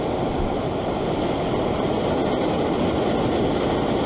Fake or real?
real